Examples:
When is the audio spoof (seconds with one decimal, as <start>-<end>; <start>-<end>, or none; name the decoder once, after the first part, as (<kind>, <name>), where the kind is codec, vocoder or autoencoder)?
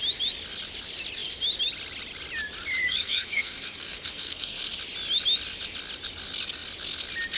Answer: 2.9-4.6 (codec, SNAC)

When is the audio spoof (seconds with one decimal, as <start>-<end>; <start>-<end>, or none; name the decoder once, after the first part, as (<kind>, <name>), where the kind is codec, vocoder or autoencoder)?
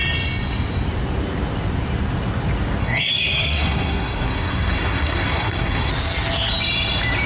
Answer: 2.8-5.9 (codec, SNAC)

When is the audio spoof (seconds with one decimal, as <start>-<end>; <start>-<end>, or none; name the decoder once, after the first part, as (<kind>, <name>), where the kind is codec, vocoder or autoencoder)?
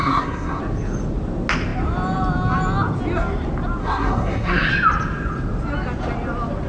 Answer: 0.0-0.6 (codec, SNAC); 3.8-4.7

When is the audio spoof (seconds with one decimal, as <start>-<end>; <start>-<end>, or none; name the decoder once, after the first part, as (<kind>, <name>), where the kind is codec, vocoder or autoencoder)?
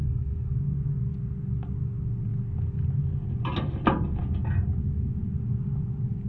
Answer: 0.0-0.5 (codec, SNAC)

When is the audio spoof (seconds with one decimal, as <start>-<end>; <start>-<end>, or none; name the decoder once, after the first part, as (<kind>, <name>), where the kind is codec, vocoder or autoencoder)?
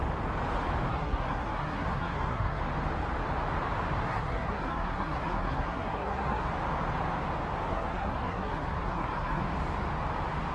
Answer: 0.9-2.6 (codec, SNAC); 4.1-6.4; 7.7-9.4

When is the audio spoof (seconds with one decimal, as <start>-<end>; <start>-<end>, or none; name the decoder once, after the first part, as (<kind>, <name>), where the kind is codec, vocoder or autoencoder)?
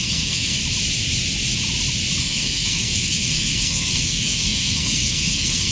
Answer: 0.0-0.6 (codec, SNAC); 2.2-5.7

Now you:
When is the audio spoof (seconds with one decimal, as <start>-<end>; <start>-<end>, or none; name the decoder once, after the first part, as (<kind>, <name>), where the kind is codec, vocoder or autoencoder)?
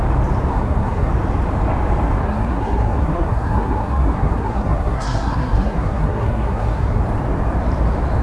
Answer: 0.5-1.1 (codec, SNAC); 2.2-7.0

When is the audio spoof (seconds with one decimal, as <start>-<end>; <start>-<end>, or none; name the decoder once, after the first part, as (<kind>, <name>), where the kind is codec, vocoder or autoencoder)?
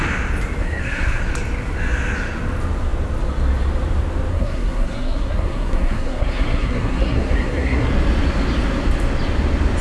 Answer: 0.6-1.2 (codec, SNAC); 4.3-7.9